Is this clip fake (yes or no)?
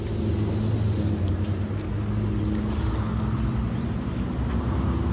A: no